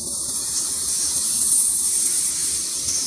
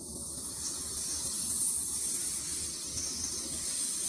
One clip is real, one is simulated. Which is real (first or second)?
second